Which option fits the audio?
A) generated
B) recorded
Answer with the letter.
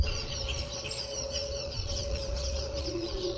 A